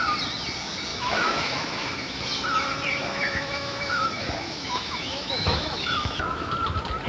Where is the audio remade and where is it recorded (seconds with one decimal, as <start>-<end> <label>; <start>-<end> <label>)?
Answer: 0.0-0.9 recorded; 0.9-2.2 remade; 2.2-3.0 recorded; 3.0-6.5 remade; 6.5-7.1 recorded